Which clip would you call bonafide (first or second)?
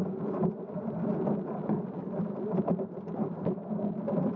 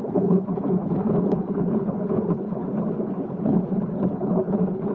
first